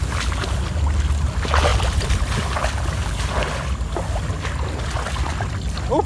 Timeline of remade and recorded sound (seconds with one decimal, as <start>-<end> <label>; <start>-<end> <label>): 0.0-6.1 recorded